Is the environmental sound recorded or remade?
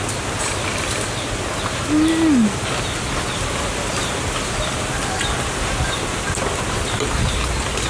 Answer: recorded